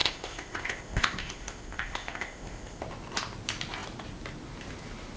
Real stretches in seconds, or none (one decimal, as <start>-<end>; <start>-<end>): 2.8-5.2